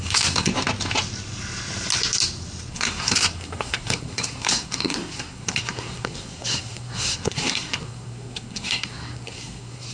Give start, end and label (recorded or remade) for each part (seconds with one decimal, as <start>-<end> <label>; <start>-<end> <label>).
0.0-0.5 remade; 0.5-2.7 recorded; 2.7-9.9 remade